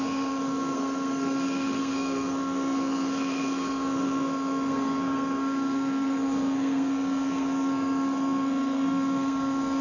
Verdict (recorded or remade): remade